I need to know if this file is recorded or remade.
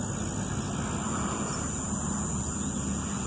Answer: recorded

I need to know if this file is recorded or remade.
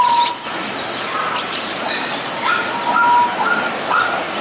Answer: recorded